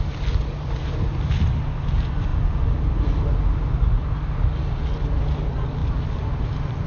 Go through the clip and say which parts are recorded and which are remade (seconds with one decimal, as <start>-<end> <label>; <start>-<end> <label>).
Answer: 0.0-6.9 recorded